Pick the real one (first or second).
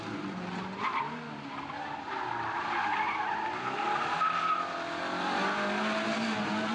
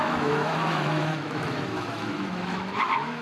first